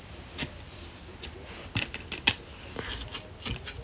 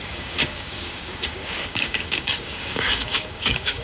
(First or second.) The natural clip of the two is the first